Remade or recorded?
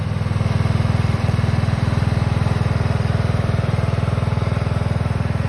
remade